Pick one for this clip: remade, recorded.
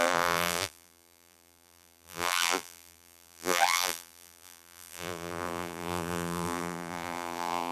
remade